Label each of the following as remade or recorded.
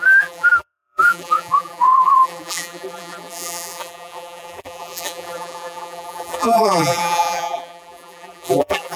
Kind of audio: remade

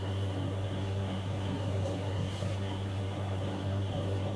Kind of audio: remade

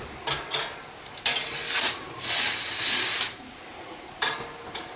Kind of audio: recorded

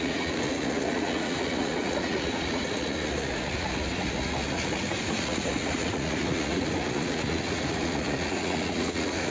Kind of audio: remade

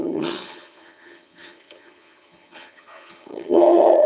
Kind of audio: remade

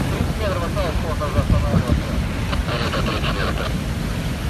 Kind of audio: recorded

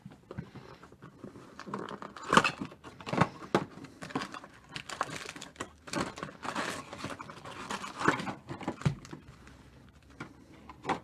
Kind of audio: recorded